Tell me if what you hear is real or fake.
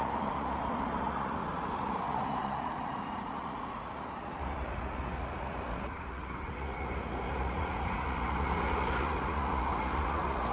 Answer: fake